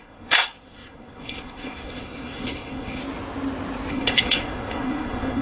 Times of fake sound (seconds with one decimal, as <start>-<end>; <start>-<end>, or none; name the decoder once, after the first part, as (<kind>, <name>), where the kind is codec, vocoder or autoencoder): 0.0-3.0 (codec, SNAC); 3.9-5.4